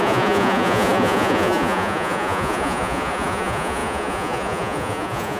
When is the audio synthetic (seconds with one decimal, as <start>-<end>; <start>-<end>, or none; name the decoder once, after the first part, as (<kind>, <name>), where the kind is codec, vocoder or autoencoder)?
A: 0.0-5.4 (vocoder, Vocos)